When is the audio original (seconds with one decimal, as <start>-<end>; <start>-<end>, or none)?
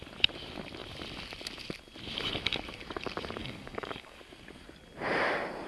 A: 0.0-3.4; 4.2-5.7